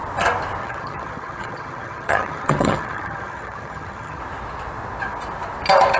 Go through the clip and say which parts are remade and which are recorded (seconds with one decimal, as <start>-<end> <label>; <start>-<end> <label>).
0.0-0.6 recorded; 0.6-4.2 remade; 4.2-6.0 recorded